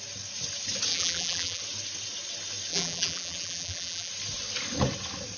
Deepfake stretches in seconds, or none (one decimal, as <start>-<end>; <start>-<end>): 0.9-1.6; 2.7-4.1